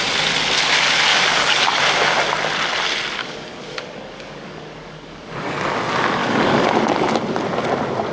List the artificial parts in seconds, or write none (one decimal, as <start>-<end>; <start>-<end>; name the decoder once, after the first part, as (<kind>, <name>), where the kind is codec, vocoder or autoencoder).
1.1-1.8 (codec, DAC); 3.2-5.5; 6.2-6.7